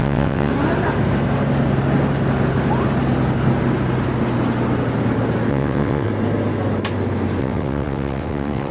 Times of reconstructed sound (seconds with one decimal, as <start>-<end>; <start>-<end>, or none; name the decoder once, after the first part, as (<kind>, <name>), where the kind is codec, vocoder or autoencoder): 0.0-0.5 (vocoder, WaveNeXt); 5.5-6.1; 7.4-8.7